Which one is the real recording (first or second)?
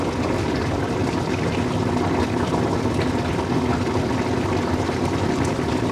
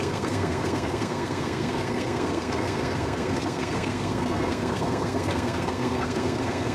first